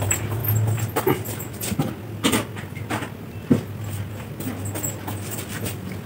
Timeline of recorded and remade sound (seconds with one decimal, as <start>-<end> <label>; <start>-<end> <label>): 0.0-6.1 recorded